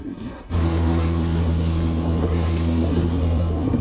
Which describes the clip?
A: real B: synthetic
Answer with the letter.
B